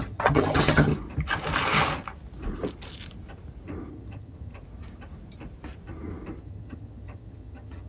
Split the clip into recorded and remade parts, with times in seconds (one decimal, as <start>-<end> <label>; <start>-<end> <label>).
0.0-0.9 remade; 0.9-3.9 recorded; 3.9-4.5 remade; 4.5-6.4 recorded; 6.4-7.9 remade